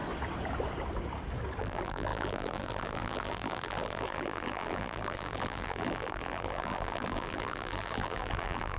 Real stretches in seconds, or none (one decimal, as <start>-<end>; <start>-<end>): 0.0-1.6